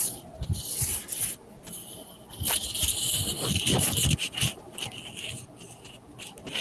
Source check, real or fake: real